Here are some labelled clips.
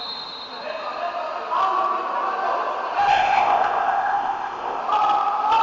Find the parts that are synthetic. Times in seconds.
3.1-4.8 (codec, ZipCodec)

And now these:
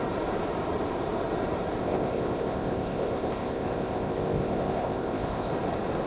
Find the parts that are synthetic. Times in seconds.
1.8-5.5 (codec, ZipCodec)

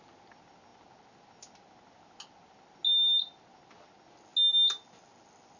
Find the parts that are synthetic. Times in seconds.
none

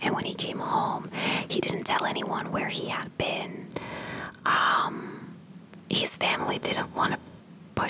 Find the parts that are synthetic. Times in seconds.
3.7-4.7 (codec, ZipCodec); 6.4-7.4

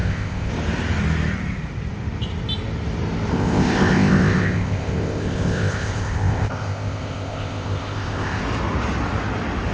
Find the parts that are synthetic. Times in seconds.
0.0-0.5 (codec, ZipCodec); 3.3-8.4

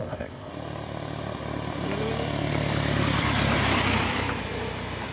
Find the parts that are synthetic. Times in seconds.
0.0-0.5 (codec, ZipCodec)

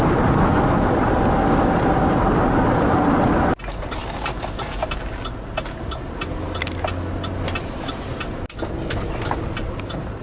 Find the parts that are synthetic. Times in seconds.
none